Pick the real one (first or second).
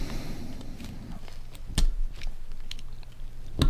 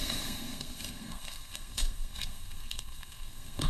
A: first